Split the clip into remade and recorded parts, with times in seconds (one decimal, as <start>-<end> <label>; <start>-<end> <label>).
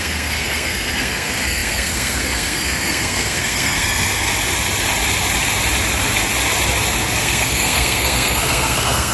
0.0-4.3 remade; 4.3-7.2 recorded; 7.2-9.1 remade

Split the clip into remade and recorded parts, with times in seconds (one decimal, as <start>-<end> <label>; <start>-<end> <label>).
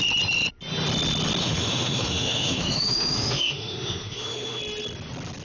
0.0-1.4 recorded; 1.4-4.6 remade; 4.6-5.4 recorded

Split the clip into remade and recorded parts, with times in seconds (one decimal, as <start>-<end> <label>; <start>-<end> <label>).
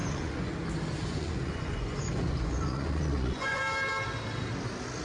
0.0-0.5 remade; 0.5-1.0 recorded; 1.0-3.6 remade; 3.6-5.0 recorded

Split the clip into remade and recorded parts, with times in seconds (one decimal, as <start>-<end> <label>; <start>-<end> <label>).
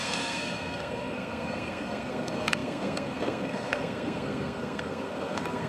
0.0-5.7 remade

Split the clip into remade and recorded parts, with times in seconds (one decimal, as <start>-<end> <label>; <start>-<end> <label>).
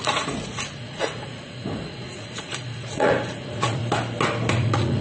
0.0-3.8 remade; 3.8-4.5 recorded; 4.5-5.0 remade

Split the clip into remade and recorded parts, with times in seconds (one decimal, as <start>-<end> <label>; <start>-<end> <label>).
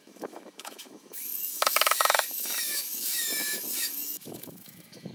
0.0-5.1 remade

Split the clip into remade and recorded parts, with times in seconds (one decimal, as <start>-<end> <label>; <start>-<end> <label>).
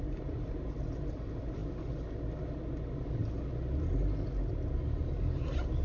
0.0-5.8 recorded